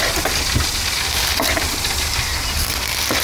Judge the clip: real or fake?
real